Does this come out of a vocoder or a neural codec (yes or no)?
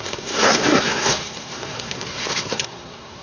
yes